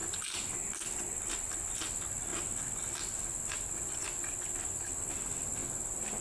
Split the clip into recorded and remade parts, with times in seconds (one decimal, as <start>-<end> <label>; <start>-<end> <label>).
0.0-6.2 recorded